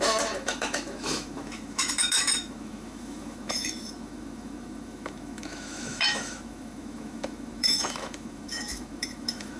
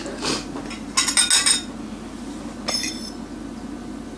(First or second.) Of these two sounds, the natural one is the second